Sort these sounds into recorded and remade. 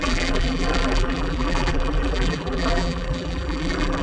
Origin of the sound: remade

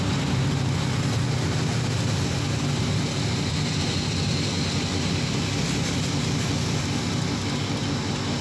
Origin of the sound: recorded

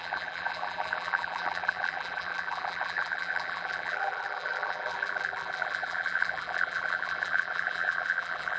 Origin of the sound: remade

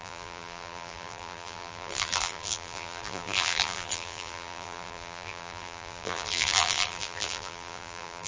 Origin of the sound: remade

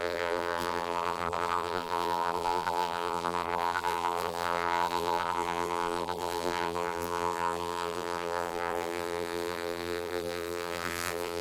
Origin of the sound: remade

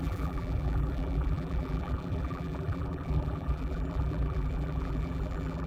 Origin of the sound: remade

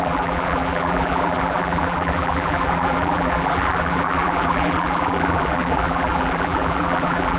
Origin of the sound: remade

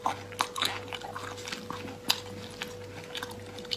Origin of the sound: recorded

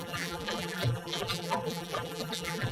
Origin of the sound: remade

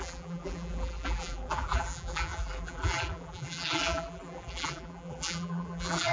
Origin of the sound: remade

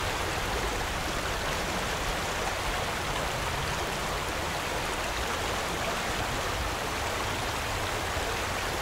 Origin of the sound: recorded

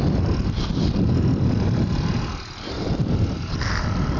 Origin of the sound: remade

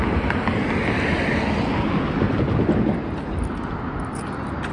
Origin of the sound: recorded